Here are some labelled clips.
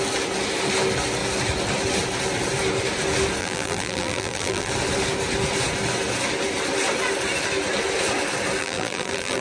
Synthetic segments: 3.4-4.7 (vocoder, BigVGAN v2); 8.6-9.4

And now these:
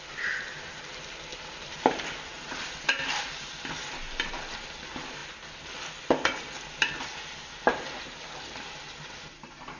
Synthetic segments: 1.3-2.1 (vocoder, BigVGAN v2)